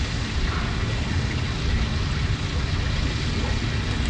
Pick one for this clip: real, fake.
real